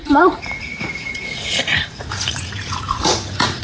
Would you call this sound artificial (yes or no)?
yes